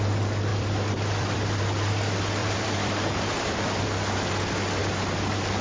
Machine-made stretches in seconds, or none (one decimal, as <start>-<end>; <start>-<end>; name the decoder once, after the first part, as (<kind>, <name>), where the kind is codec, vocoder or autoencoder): 0.5-1.6 (vocoder, BigVGAN v2); 2.4-3.8